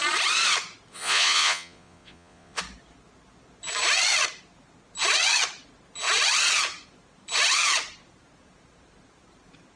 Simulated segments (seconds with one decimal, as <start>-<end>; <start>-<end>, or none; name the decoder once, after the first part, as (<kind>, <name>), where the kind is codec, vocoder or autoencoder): 0.9-2.6 (vocoder, Vocos)